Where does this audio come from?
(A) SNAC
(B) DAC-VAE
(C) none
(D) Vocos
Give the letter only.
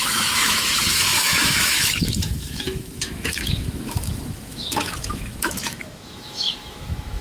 B